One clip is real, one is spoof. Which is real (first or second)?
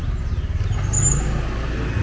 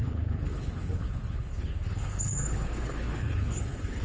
first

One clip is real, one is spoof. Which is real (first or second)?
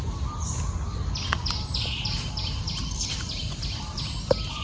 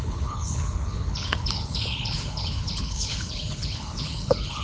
first